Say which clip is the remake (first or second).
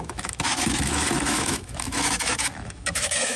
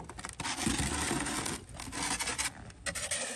first